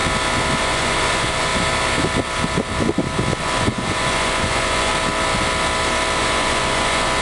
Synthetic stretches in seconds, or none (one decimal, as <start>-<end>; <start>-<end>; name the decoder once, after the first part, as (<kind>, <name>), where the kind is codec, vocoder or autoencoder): 0.6-1.5 (vocoder, Vocos); 3.4-4.9; 6.2-7.2